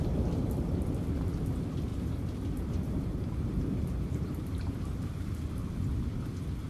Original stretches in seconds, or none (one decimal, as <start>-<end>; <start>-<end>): 0.0-1.9; 5.5-6.7